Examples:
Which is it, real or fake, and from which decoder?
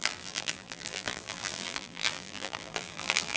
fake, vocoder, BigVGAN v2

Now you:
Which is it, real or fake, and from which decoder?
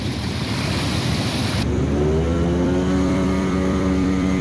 fake, vocoder, BigVGAN v2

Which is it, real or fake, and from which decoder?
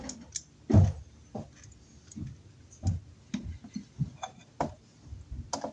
real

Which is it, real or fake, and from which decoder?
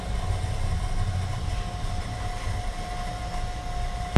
real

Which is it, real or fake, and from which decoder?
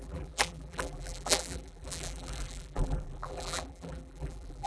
fake, vocoder, BigVGAN v2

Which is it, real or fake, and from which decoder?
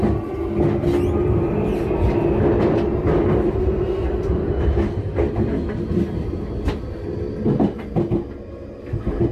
real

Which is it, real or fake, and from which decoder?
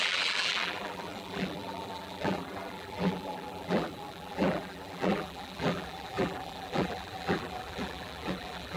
fake, vocoder, BigVGAN v2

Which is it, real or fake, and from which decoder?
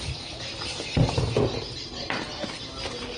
real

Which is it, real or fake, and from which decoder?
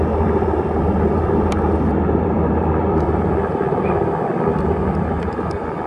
fake, vocoder, BigVGAN v2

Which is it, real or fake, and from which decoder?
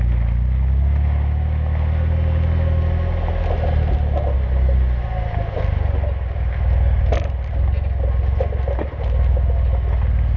real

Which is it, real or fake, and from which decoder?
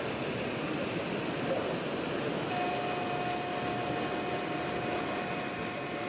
real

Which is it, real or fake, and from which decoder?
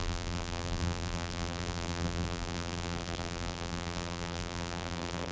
fake, vocoder, BigVGAN v2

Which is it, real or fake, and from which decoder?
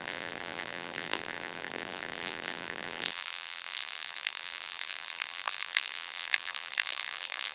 fake, vocoder, BigVGAN v2